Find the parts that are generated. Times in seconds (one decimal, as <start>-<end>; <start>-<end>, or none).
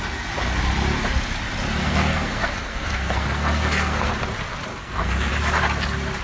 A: 1.8-4.1; 4.7-5.3